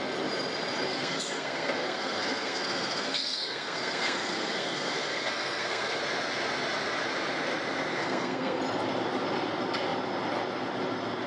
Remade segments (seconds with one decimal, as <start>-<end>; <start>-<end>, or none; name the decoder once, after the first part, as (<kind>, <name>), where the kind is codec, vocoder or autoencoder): 0.9-6.0 (codec, SNAC); 7.9-8.6